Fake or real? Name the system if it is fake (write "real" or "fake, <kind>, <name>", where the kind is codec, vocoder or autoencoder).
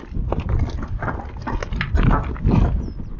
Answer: real